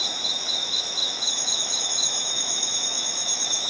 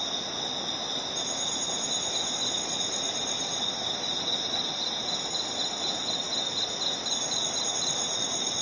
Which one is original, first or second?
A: second